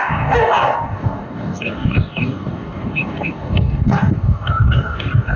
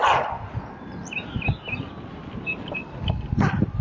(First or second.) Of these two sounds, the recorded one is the second